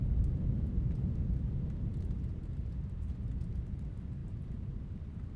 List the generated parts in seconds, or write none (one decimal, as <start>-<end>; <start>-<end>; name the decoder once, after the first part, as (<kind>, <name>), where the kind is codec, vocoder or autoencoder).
1.9-3.8 (vocoder, BigVGAN v2); 4.2-4.9

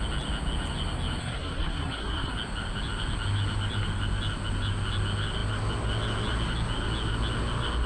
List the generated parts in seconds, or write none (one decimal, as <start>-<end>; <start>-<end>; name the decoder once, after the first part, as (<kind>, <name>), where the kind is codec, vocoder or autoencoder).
1.2-2.3 (codec, SNAC)